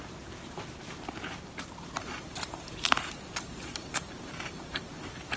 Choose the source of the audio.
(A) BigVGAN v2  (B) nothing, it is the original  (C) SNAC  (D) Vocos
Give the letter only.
A